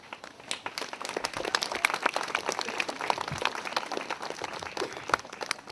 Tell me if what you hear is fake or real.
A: real